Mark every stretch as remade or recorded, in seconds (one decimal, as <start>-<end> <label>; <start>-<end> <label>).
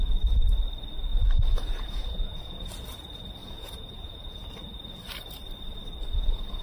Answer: 0.0-1.1 recorded; 1.1-2.7 remade; 2.7-3.4 recorded; 3.4-4.5 remade; 4.5-6.6 recorded